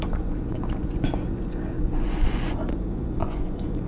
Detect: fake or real fake